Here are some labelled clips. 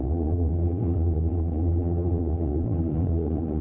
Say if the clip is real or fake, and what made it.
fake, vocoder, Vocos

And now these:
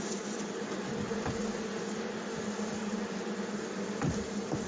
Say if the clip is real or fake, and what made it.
real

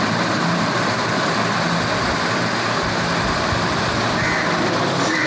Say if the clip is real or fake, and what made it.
real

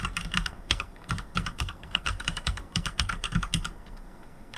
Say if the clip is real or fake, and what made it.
fake, codec, SNAC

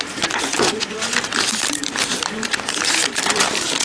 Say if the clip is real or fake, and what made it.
fake, vocoder, BigVGAN v2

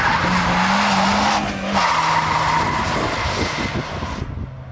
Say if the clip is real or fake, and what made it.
real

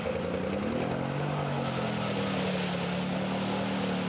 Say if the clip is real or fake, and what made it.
real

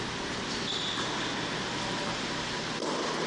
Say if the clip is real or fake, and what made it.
real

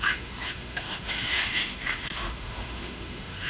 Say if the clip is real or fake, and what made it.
fake, autoencoder, DAC-VAE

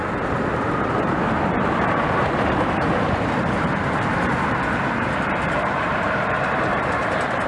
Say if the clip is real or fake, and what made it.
fake, vocoder, BigVGAN v2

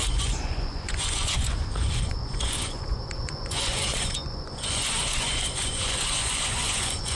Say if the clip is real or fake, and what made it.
fake, vocoder, Vocos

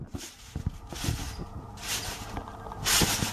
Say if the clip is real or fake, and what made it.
fake, vocoder, BigVGAN v2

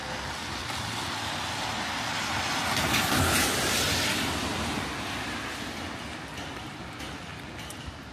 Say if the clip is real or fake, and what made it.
real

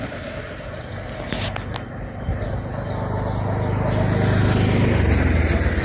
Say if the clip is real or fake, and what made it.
real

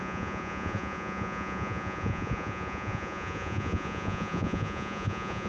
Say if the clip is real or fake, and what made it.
fake, vocoder, Vocos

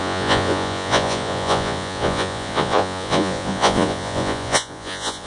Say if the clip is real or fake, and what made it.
fake, vocoder, Vocos